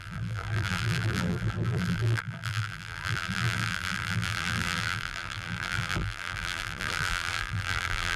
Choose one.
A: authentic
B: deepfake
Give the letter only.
B